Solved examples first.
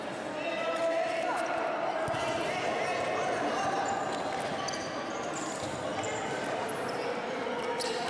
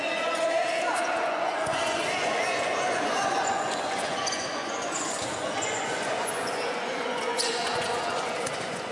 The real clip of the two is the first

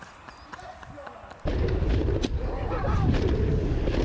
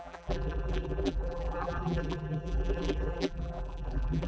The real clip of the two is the first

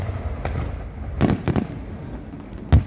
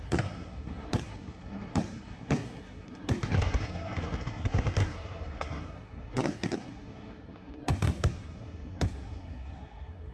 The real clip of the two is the first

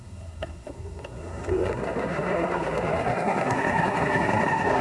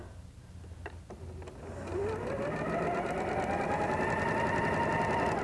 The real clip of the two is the second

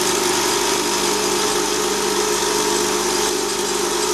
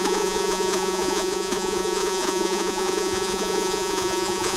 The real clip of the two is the first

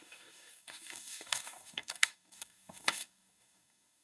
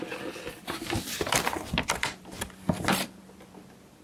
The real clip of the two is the second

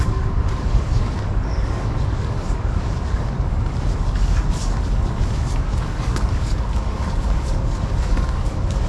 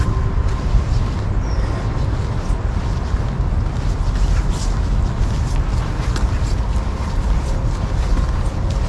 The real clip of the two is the second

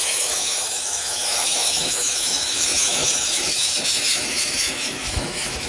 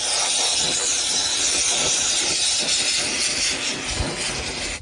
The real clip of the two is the second